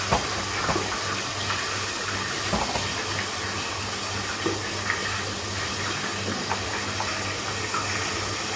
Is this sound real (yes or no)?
yes